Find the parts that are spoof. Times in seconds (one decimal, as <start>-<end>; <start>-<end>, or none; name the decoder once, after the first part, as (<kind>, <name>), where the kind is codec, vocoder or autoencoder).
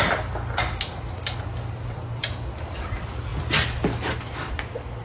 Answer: none